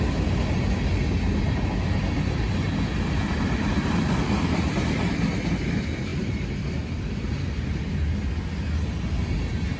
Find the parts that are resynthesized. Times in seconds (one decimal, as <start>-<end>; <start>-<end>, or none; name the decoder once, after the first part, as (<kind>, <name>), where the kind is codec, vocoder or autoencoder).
none